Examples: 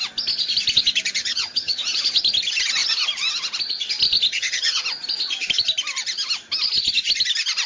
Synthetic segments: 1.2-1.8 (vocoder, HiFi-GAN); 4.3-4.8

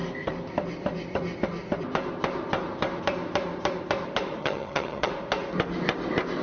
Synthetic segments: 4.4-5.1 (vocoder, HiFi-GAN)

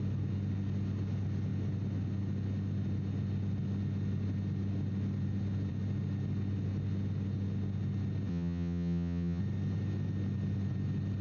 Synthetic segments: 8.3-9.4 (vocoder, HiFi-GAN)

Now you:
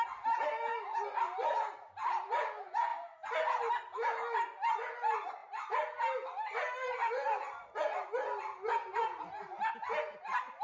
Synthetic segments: none

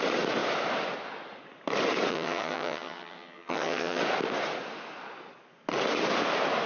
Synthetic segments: 2.1-4.0 (vocoder, HiFi-GAN)

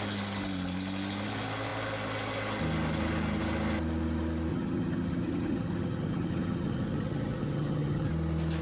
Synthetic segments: 4.5-8.1 (vocoder, HiFi-GAN)

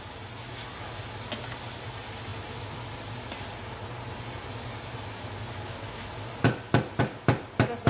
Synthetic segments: none